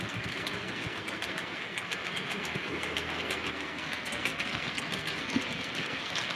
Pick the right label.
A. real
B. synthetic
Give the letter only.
B